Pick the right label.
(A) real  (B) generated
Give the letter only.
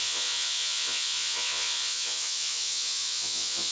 B